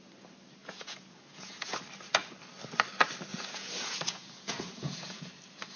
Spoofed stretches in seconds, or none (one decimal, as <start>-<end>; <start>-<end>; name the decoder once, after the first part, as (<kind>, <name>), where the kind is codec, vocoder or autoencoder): 0.6-1.8 (vocoder, Vocos); 3.3-5.3